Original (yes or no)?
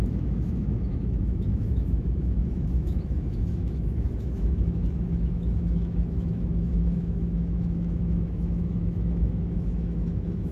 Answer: no